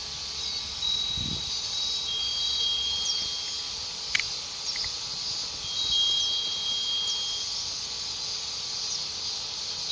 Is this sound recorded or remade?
recorded